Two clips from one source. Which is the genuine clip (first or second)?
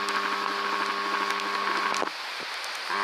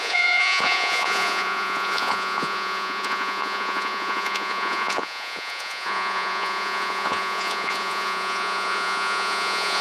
first